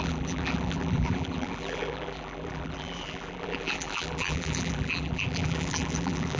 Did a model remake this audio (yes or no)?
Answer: yes